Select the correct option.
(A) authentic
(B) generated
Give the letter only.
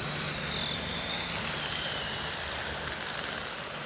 A